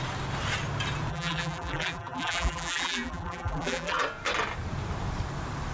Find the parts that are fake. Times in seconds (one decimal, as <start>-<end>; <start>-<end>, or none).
1.1-4.0